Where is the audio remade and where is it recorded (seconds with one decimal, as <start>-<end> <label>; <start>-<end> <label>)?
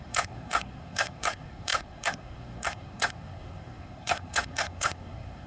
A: 0.0-5.5 remade